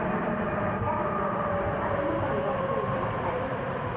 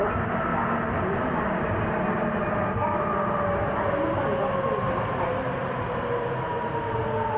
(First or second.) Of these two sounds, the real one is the second